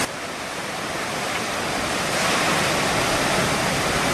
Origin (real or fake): real